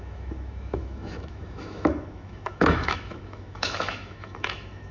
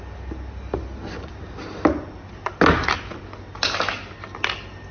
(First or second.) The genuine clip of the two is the second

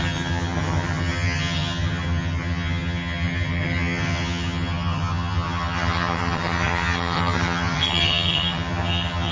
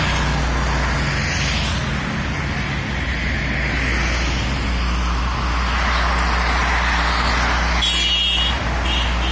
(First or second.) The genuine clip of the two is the second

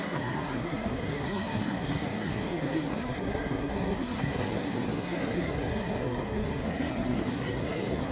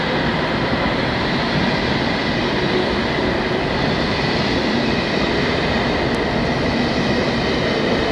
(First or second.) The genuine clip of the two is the second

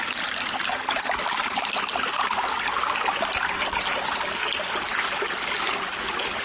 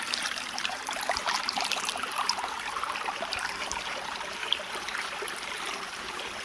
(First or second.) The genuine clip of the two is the first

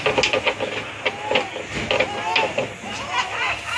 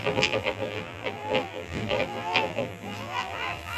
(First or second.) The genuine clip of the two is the first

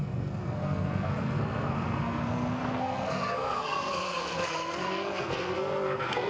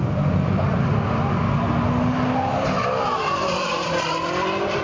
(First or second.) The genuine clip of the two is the second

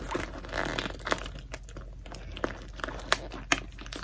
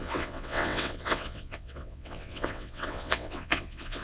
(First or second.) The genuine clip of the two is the first